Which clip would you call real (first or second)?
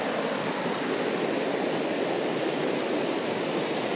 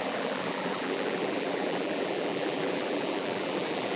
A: first